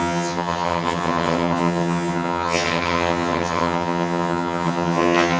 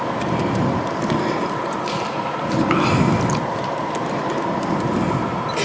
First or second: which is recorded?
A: second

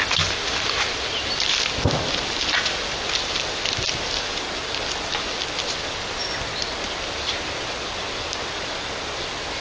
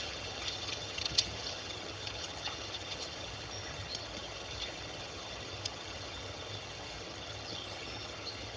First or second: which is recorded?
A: first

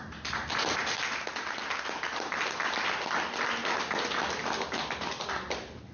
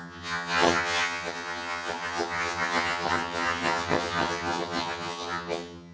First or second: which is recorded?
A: first